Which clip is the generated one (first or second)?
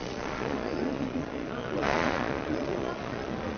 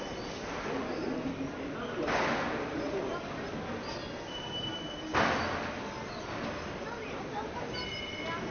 first